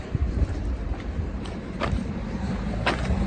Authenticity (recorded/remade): remade